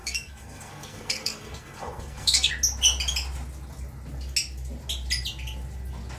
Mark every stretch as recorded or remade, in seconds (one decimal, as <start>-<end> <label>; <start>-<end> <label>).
0.0-2.5 remade; 2.5-6.2 recorded